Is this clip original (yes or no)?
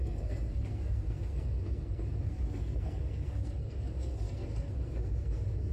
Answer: no